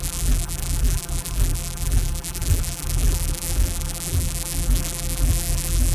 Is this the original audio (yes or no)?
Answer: no